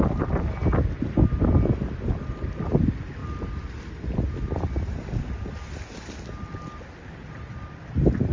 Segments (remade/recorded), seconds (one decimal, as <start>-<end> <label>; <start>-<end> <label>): 0.0-8.3 recorded

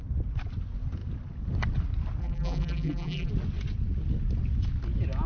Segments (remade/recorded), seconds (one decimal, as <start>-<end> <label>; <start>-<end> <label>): 0.0-2.2 recorded; 2.2-3.3 remade; 3.3-5.3 recorded